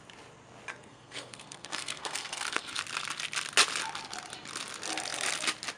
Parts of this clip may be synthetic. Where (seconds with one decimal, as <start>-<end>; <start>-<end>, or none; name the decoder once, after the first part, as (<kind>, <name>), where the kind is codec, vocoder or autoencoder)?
0.7-2.8 (codec, SNAC)